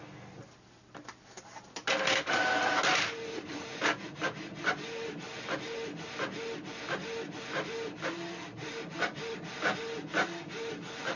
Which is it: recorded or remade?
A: recorded